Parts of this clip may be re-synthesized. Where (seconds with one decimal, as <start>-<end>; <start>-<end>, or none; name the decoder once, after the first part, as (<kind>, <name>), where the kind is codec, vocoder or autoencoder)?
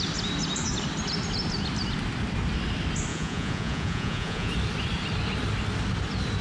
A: 3.1-4.5 (vocoder, Vocos)